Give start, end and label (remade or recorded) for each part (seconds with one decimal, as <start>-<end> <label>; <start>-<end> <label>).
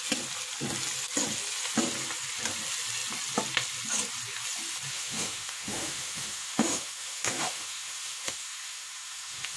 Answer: 0.0-4.9 recorded; 4.9-9.6 remade